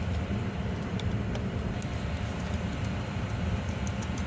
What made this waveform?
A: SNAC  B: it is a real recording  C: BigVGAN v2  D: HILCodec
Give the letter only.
C